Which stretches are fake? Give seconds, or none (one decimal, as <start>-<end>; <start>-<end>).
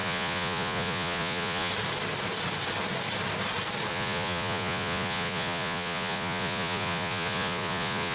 0.0-1.7; 3.9-8.1